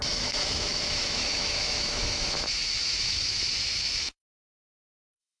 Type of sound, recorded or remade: remade